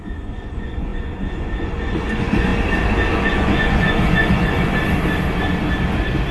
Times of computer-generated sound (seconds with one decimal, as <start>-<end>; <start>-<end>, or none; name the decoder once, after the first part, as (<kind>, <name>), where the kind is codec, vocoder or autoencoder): 0.0-2.5 (vocoder, Vocos); 3.1-4.7